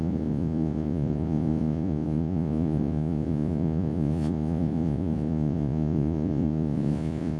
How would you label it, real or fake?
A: fake